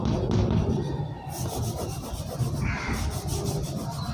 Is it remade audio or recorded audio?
recorded